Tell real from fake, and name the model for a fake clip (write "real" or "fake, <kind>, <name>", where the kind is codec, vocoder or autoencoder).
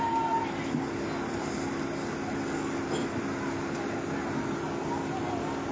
real